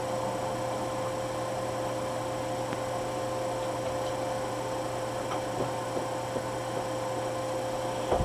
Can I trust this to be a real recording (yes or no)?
yes